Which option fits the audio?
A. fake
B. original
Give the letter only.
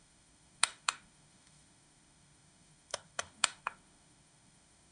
A